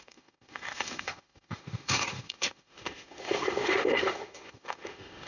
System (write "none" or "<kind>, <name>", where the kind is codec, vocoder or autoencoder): autoencoder, DAC-VAE